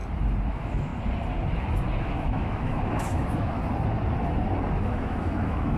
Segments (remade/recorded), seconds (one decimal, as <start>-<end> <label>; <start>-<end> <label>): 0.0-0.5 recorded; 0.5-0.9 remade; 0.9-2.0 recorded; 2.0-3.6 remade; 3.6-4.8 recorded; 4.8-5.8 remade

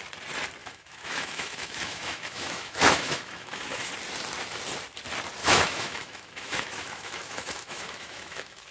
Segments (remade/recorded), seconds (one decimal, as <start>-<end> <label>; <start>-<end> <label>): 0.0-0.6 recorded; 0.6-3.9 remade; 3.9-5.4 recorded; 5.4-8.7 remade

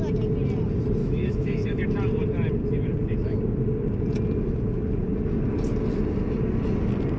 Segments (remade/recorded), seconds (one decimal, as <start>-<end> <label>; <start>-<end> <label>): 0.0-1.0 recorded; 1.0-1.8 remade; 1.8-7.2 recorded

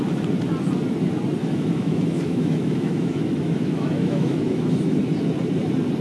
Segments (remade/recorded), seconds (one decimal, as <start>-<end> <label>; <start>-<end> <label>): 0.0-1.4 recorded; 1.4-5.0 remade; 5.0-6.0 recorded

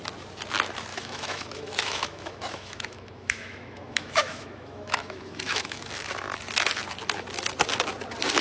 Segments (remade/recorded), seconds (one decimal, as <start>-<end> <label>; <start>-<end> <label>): 0.0-0.9 recorded; 0.9-5.9 remade; 5.9-8.4 recorded

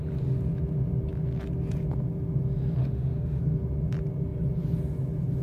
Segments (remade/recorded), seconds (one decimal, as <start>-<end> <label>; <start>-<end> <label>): 0.0-2.8 recorded; 2.8-3.4 remade; 3.4-5.4 recorded

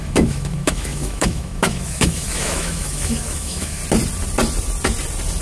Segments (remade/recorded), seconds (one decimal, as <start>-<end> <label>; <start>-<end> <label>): 0.0-3.8 remade; 3.8-5.4 recorded